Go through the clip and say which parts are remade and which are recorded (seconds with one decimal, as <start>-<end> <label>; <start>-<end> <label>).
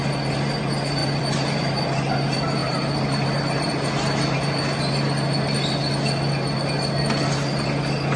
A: 0.0-1.0 recorded; 1.0-2.0 remade; 2.0-2.6 recorded; 2.6-3.7 remade; 3.7-8.2 recorded